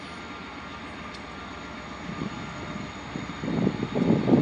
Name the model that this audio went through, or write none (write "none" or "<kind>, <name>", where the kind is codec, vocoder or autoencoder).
none